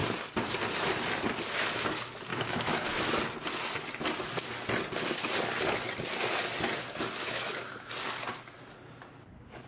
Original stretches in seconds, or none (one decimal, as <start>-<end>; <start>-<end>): 0.0-2.3; 2.8-7.2; 7.9-9.7